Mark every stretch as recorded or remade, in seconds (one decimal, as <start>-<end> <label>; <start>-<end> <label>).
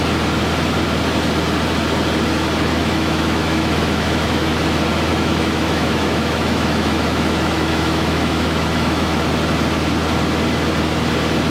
0.0-2.8 recorded; 2.8-4.5 remade; 4.5-5.1 recorded; 5.1-9.3 remade; 9.3-11.5 recorded